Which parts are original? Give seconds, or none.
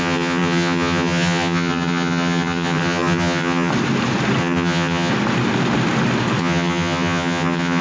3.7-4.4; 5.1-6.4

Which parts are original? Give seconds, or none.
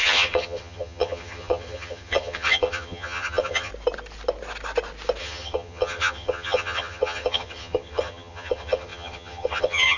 3.7-5.2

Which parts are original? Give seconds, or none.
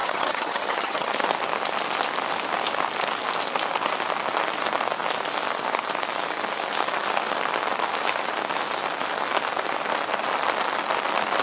1.1-11.4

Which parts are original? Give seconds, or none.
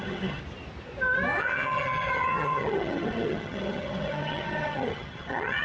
0.4-1.4